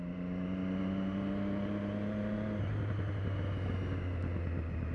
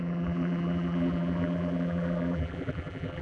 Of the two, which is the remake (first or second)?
second